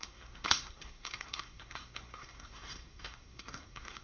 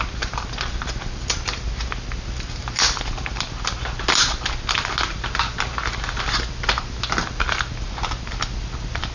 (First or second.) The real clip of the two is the second